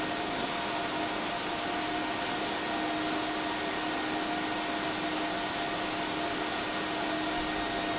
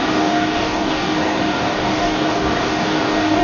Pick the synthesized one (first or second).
second